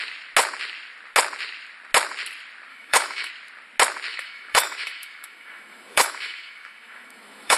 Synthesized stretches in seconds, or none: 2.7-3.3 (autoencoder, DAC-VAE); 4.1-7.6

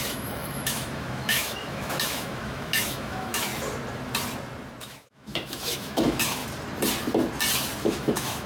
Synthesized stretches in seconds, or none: 0.0-3.5 (autoencoder, DAC-VAE); 4.8-6.4; 7.8-8.5